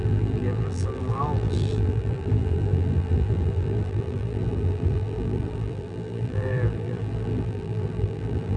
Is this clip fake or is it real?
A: fake